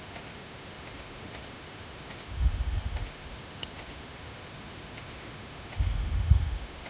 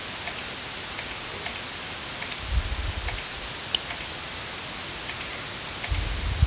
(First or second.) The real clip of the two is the second